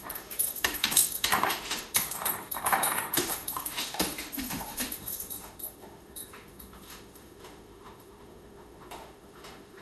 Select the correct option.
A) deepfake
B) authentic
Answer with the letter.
A